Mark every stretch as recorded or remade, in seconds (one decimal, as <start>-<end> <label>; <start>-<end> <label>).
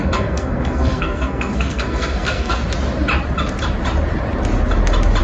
0.0-2.6 remade; 2.6-5.2 recorded